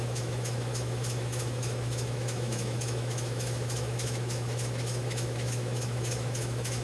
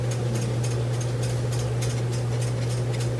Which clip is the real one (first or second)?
second